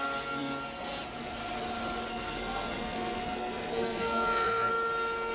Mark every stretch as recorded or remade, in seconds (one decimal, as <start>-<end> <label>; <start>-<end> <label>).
0.0-2.1 recorded; 2.1-4.7 remade; 4.7-5.3 recorded